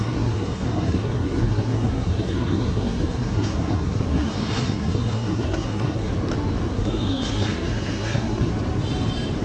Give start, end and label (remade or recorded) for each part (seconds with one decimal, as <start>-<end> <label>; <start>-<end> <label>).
0.0-6.1 remade; 6.1-6.7 recorded; 6.7-8.5 remade; 8.5-9.4 recorded